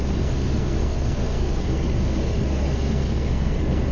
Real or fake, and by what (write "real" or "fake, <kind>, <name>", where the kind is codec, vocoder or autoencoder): fake, codec, SNAC